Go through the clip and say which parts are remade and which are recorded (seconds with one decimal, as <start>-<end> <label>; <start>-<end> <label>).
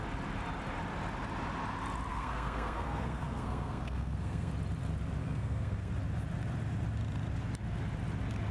0.0-2.1 recorded; 2.1-4.5 remade; 4.5-5.2 recorded; 5.2-5.9 remade; 5.9-8.5 recorded